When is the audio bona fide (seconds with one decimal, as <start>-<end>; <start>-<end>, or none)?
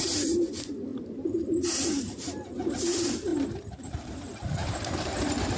3.3-3.8